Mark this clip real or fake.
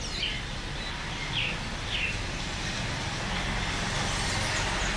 real